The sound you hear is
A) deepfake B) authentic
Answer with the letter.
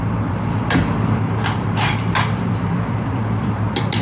A